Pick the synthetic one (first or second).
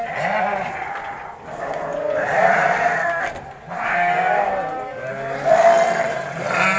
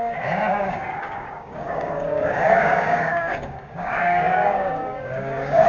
second